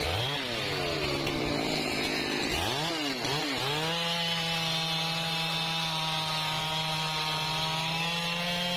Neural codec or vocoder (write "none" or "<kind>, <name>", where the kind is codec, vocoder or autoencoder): none